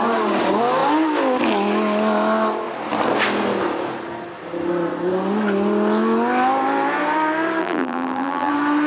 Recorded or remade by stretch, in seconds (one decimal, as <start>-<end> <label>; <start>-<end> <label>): 0.0-7.6 recorded; 7.6-8.5 remade; 8.5-8.9 recorded